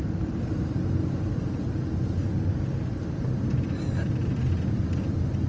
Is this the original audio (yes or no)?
yes